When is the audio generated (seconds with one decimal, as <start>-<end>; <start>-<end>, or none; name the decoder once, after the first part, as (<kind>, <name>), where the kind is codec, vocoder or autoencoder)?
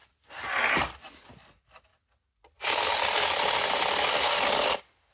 none